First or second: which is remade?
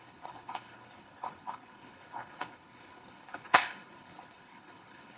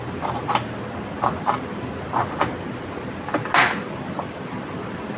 first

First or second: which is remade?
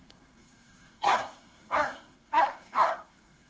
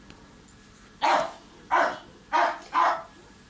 first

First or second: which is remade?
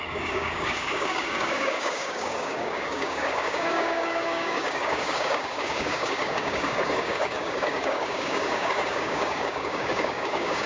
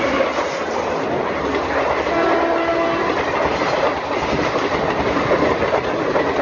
first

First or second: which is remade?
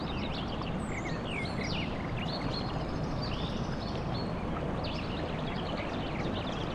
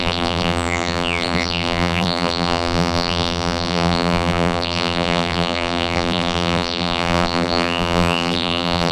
second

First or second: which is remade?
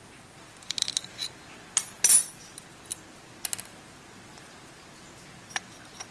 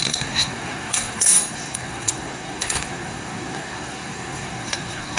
second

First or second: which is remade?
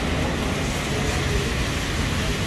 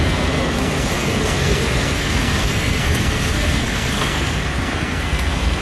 second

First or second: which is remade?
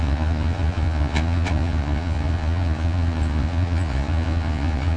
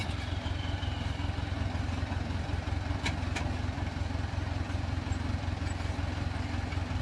first